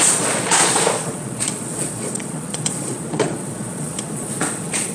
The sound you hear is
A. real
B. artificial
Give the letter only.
B